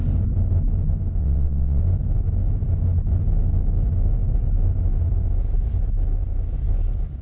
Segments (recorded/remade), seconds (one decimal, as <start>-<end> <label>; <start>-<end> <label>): 0.0-1.2 recorded; 1.2-1.8 remade; 1.8-7.2 recorded